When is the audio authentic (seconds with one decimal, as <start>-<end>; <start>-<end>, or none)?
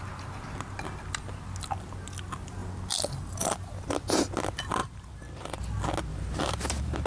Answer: 0.0-4.8; 5.6-6.1